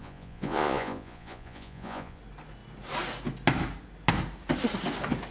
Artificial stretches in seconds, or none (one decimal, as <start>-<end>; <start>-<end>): 0.0-2.2